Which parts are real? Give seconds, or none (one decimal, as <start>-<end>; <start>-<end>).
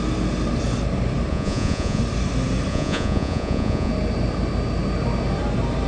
0.0-1.3; 2.0-2.7; 3.9-5.9